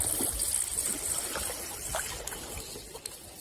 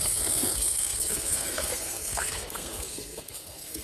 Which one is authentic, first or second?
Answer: first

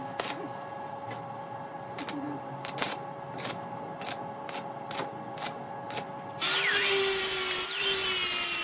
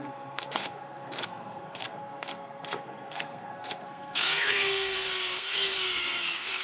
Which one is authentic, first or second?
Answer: first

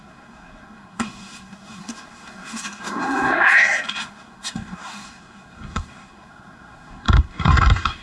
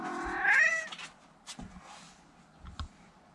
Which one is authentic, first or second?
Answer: second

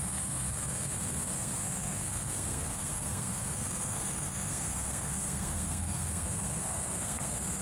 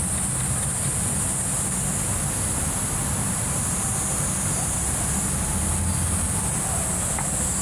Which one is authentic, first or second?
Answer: second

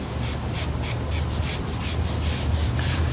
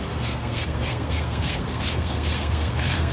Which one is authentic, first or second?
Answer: first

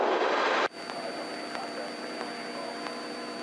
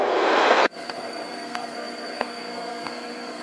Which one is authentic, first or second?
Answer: first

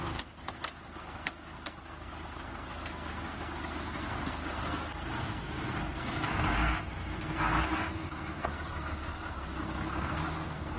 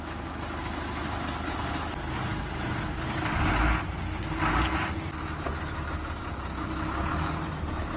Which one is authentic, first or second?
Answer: second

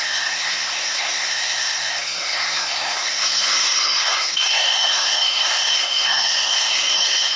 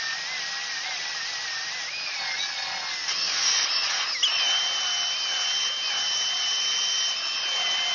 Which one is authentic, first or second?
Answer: second